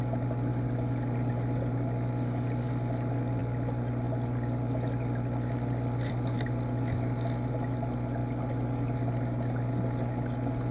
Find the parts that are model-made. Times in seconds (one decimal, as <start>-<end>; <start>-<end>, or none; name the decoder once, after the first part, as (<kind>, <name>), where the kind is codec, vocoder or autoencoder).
none